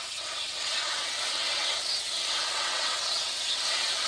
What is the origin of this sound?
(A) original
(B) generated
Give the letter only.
B